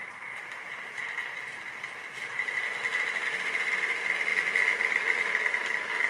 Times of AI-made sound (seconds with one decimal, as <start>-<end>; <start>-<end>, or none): 0.0-2.0

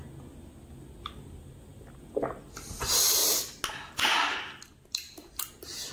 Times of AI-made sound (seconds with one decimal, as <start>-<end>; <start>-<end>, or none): none

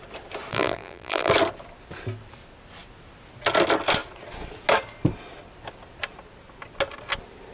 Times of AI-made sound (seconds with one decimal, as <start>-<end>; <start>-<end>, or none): 0.5-1.3

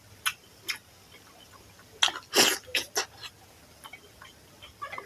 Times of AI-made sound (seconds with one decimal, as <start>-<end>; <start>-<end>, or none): 0.4-1.3

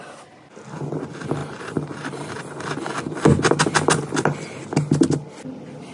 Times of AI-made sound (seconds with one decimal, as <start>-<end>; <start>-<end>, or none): 1.4-2.4

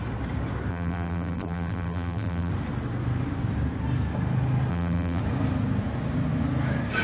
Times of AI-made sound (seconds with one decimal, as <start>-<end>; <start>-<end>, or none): 0.7-2.5; 4.7-5.2

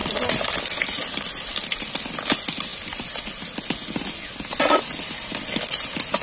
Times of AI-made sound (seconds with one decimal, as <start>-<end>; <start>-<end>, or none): 0.0-1.9

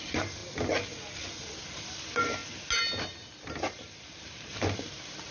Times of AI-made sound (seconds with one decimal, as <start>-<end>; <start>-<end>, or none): 0.0-0.4; 1.6-2.4; 3.0-5.3